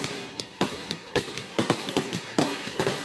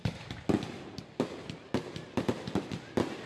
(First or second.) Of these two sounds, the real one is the second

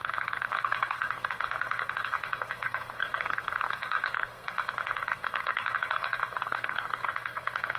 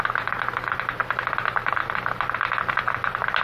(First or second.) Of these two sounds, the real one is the second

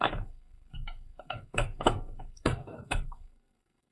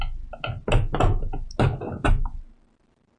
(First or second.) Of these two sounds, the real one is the second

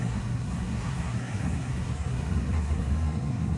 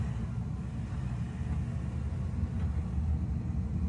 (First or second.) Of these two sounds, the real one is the second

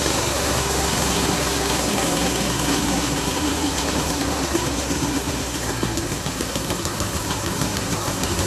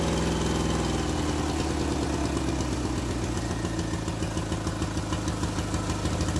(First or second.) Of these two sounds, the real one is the second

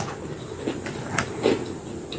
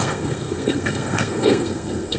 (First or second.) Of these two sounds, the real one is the first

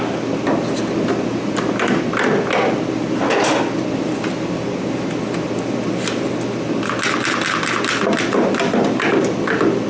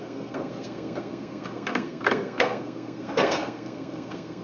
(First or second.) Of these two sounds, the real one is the first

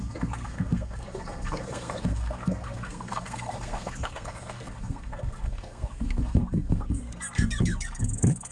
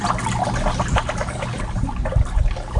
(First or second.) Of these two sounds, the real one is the second